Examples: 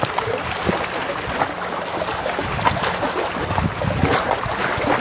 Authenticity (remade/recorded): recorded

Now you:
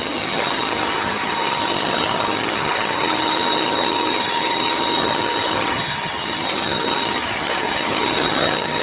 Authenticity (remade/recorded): remade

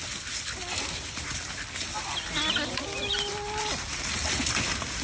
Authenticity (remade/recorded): recorded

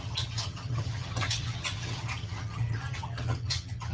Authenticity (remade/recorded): remade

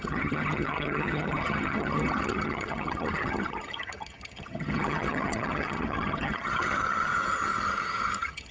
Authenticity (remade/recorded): remade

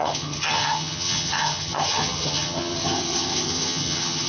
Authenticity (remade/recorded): remade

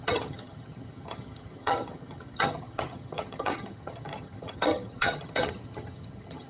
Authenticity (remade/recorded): remade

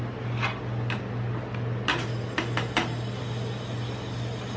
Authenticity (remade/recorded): recorded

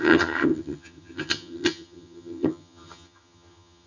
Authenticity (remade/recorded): remade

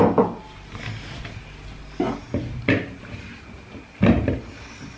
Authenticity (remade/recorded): recorded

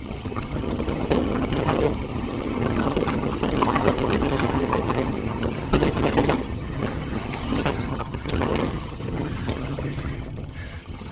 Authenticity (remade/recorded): remade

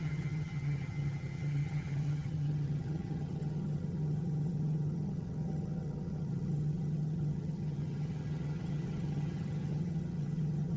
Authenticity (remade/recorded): remade